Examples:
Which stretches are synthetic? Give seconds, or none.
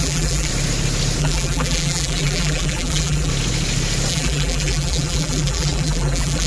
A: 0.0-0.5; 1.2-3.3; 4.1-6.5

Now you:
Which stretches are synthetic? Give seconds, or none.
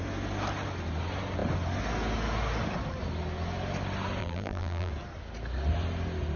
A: 4.2-4.9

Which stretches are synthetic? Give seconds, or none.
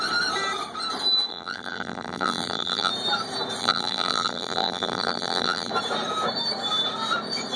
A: 1.3-2.9; 3.6-5.7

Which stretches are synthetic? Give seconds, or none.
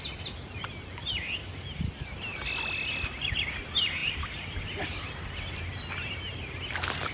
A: none